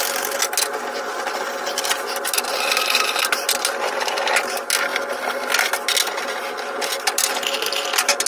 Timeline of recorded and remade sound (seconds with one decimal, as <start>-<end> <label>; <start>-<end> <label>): 0.0-8.3 recorded